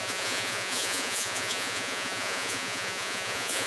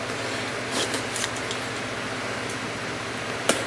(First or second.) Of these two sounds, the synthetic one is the first